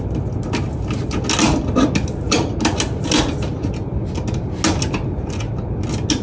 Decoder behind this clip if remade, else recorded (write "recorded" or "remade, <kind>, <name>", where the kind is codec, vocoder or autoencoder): recorded